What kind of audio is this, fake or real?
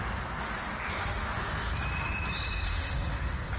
real